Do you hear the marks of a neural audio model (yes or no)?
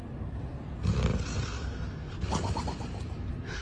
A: no